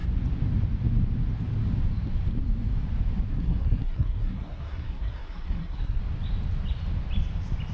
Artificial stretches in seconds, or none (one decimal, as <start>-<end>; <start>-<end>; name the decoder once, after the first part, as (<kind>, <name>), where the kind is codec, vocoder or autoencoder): 3.3-6.0 (codec, SNAC)